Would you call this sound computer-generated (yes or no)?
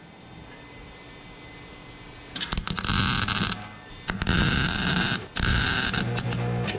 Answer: no